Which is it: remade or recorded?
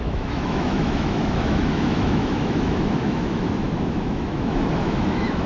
remade